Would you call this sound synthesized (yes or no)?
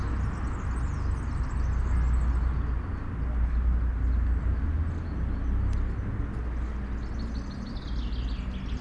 no